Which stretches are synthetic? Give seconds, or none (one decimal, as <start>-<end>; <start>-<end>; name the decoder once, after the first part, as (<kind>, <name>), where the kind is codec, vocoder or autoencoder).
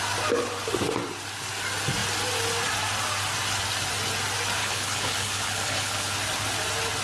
4.6-6.1 (codec, HILCodec)